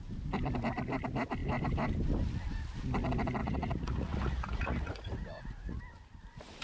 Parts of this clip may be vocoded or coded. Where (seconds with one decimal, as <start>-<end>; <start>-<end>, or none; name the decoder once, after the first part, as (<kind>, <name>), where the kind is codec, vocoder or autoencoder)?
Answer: 3.4-5.8 (vocoder, Vocos)